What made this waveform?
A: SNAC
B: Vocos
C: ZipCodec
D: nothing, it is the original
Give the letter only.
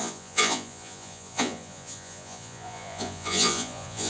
B